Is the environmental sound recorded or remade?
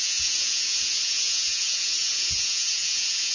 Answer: remade